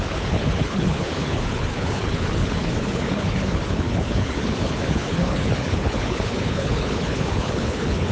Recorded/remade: remade